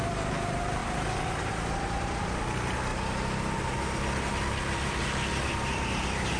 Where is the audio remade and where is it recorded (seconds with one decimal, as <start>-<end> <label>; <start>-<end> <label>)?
0.0-6.4 recorded